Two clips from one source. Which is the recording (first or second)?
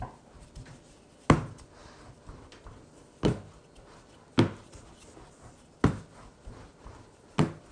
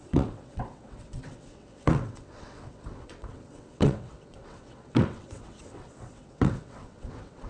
first